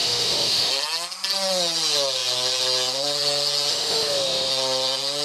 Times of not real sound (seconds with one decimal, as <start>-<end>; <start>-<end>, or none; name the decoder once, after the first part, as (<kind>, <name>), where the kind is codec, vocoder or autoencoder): 0.0-0.7 (autoencoder, DAC-VAE); 3.7-4.5